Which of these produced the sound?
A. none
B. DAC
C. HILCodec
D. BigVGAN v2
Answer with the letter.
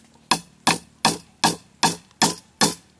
A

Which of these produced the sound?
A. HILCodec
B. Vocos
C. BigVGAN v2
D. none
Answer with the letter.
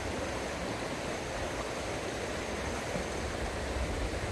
D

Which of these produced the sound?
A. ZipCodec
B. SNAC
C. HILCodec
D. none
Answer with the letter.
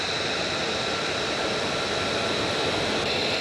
D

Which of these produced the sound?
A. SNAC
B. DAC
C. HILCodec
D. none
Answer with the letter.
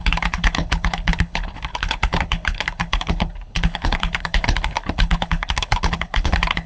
C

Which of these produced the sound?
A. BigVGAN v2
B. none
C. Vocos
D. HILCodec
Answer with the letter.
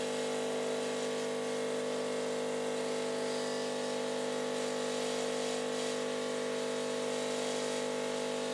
B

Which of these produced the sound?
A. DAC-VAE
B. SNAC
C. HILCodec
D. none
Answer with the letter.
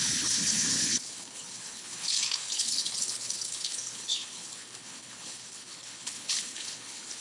C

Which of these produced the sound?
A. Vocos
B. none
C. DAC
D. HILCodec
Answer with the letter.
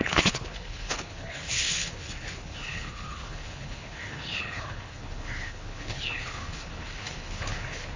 D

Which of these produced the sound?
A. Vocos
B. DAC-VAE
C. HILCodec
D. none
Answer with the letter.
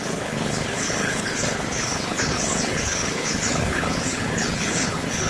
C